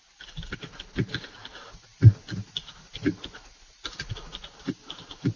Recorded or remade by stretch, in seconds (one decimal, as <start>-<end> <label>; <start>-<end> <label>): 0.0-5.4 recorded